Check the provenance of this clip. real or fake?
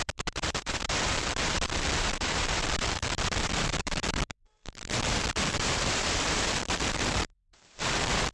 fake